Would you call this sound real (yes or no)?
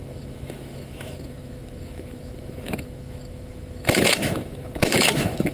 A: no